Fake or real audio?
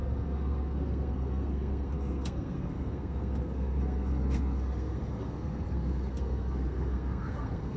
fake